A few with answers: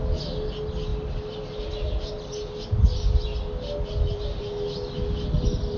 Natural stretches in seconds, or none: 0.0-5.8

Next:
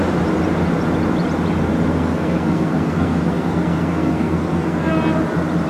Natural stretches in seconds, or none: 0.0-1.9; 4.9-5.7

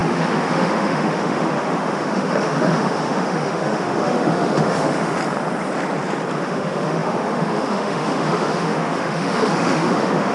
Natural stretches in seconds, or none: 5.2-6.4

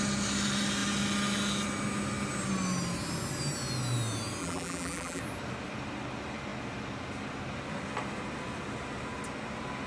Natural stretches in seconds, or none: 0.0-4.4; 5.2-9.9

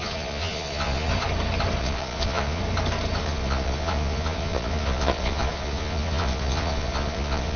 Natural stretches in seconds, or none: 1.1-1.8; 2.6-3.2

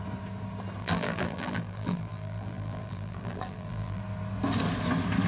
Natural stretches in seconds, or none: 0.0-0.8; 4.0-5.3

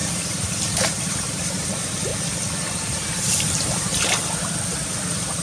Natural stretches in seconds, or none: 2.1-2.6; 3.9-5.0